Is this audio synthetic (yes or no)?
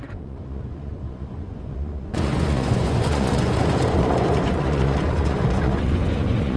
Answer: yes